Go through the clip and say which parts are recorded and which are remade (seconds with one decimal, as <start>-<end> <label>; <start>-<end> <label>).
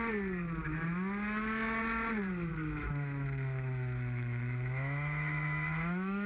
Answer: 0.0-2.5 recorded; 2.5-6.3 remade